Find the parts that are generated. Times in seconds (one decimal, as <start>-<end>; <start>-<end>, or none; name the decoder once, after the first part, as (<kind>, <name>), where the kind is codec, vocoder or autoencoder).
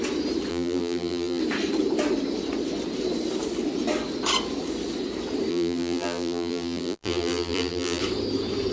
0.5-1.4 (vocoder, BigVGAN v2); 5.5-8.0